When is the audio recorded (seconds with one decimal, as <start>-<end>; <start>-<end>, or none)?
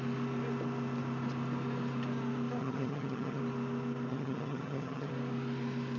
0.0-2.6; 3.4-4.1; 5.1-6.0